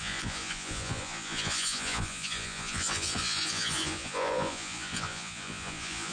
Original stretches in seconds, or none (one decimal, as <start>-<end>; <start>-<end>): none

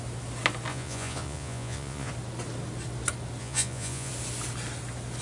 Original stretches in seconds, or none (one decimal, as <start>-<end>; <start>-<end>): 0.0-0.7; 2.1-3.4; 4.1-5.2

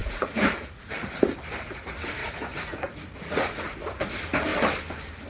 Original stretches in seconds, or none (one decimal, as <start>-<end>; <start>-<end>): 0.9-2.2; 4.0-5.3

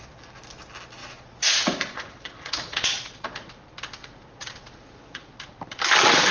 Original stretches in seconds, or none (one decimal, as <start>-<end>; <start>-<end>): 0.0-1.0; 3.5-4.0; 5.5-6.3